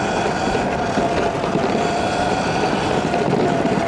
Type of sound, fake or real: real